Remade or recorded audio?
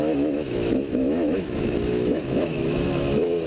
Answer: remade